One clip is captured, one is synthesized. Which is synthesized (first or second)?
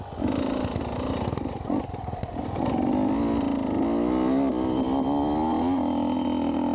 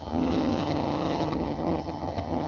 second